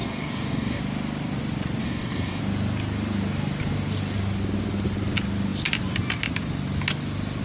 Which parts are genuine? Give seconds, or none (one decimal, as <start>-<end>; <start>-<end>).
0.8-1.8; 2.4-7.4